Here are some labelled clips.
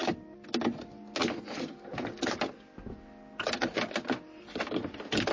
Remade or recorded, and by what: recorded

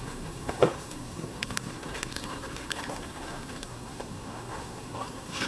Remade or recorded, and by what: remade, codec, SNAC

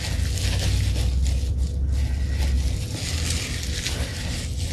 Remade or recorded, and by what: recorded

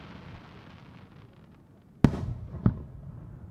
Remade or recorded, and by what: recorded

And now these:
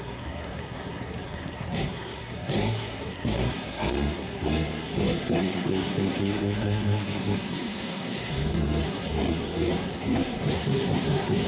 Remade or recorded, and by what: remade, codec, SNAC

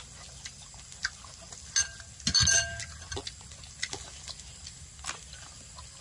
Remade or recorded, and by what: recorded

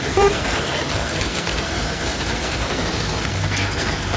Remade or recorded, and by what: remade, codec, SNAC